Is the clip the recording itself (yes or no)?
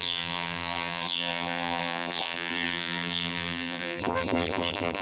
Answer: no